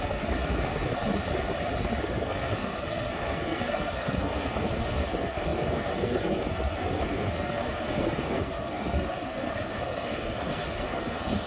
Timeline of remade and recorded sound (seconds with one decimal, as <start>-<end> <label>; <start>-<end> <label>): 0.0-0.9 remade; 0.9-2.0 recorded; 2.0-11.5 remade